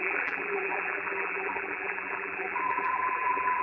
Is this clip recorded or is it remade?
remade